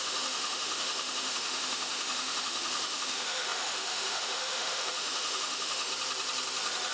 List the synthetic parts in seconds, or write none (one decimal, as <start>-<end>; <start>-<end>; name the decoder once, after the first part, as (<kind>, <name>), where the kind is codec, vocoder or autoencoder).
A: 0.0-5.9 (autoencoder, DAC-VAE)